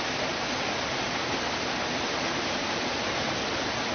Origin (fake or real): real